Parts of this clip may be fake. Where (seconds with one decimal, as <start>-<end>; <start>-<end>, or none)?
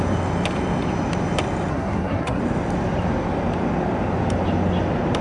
1.7-2.4